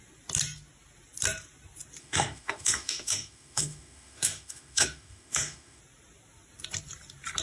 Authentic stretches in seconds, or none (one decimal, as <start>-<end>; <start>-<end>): 0.0-2.0; 5.8-7.4